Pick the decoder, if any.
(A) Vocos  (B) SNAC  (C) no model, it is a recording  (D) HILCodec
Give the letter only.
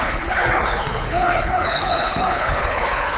D